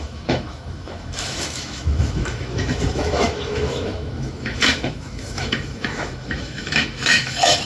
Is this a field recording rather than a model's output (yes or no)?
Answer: no